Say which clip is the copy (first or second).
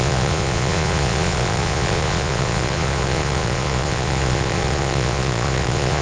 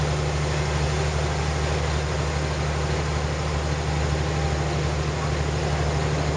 first